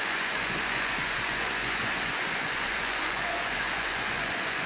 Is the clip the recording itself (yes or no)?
no